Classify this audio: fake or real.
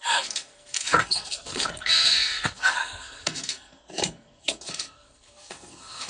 fake